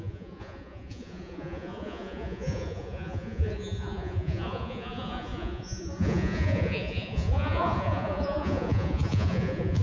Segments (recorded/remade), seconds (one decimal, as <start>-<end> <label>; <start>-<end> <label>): 0.0-9.8 remade